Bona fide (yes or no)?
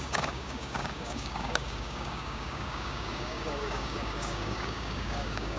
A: no